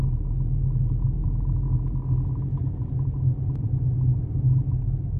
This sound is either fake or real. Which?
real